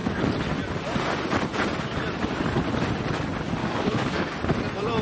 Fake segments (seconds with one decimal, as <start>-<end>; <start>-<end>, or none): 3.6-4.3